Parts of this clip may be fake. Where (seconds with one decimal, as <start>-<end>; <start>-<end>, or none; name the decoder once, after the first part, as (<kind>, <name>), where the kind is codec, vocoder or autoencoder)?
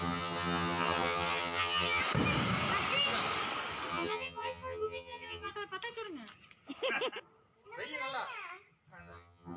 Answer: 0.0-2.0 (vocoder, HiFi-GAN); 3.9-5.5; 9.0-9.6